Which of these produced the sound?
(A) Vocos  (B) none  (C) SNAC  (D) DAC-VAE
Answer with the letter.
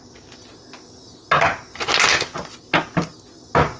B